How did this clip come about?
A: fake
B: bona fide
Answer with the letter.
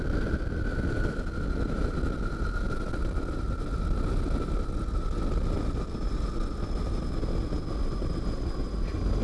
B